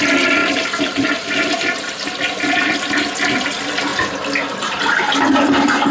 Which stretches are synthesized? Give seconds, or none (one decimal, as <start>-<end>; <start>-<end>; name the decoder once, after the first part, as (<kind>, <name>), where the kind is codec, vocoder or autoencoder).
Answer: 0.4-1.9 (vocoder, BigVGAN v2)